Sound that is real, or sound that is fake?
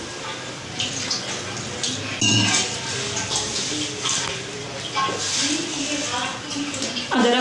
real